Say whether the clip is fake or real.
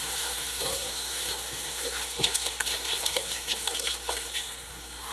fake